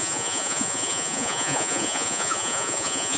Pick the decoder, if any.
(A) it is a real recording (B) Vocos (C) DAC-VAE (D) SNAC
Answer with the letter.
B